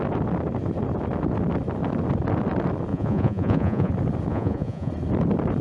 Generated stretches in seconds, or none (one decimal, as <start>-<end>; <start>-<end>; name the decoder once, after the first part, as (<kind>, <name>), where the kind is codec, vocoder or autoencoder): 2.9-3.9 (vocoder, Vocos); 4.3-4.9